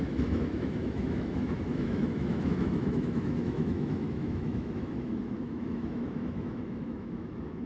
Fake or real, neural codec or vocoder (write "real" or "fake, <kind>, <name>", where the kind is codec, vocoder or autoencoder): fake, autoencoder, DAC-VAE